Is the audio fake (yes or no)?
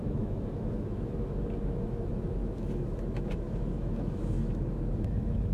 yes